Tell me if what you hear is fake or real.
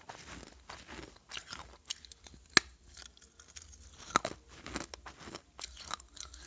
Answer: real